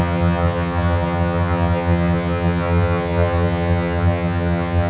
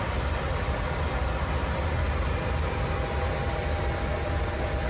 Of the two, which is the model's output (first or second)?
first